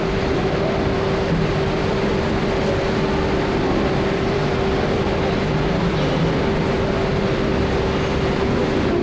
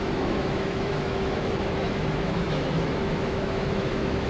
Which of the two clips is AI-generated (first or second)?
second